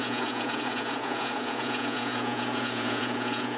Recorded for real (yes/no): no